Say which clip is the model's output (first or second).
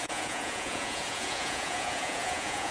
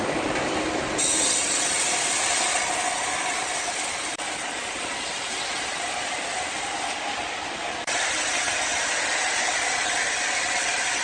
first